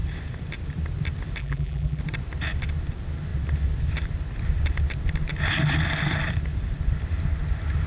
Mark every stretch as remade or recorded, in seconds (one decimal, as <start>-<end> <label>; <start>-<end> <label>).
0.0-1.4 recorded; 1.4-2.0 remade; 2.0-7.9 recorded